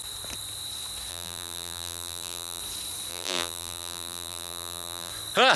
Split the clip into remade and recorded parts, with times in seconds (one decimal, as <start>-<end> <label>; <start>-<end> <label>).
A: 0.0-1.1 recorded; 1.1-2.6 remade; 2.6-3.1 recorded; 3.1-5.1 remade; 5.1-5.6 recorded